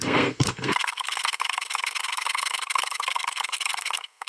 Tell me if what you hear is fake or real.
fake